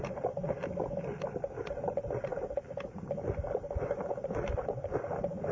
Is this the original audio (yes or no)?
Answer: yes